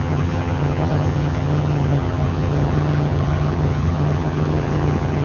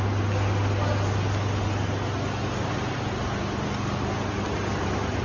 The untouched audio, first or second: second